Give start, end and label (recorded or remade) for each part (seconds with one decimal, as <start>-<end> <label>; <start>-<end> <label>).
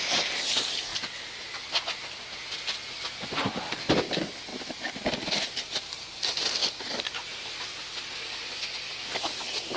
0.0-9.8 recorded